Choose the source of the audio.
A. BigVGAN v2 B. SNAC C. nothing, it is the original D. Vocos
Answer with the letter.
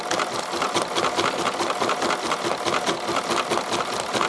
C